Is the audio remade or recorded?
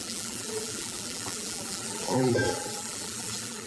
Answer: remade